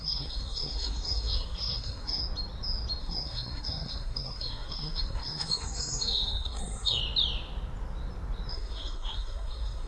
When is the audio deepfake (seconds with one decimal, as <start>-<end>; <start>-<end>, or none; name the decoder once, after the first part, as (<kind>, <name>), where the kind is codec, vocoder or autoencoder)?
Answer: 0.0-2.2 (codec, SNAC); 3.0-7.0; 8.5-9.9